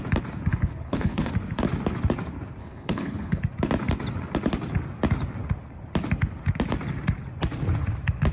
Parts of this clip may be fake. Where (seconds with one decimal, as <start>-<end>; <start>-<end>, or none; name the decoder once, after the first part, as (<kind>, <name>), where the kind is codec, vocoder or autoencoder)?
0.5-1.3 (codec, HILCodec); 2.6-3.4